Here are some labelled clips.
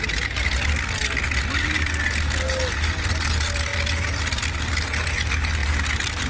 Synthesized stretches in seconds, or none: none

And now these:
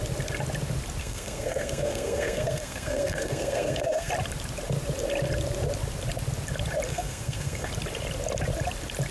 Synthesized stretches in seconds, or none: 1.0-4.1 (codec, SNAC); 6.9-7.7